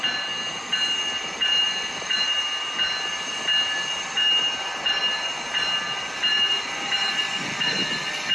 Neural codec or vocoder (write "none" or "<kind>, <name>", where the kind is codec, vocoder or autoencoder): none